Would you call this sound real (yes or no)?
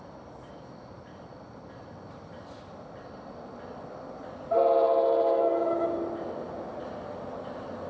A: yes